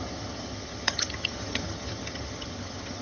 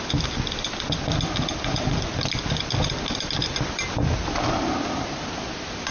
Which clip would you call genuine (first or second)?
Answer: second